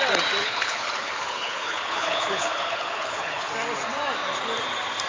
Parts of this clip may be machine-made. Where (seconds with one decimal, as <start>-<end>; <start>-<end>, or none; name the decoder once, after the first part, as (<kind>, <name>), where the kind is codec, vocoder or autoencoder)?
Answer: 0.4-3.5 (codec, HILCodec)